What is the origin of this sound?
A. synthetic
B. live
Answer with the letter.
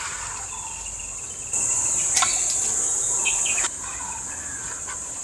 B